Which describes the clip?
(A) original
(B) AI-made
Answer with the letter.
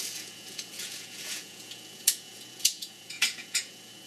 B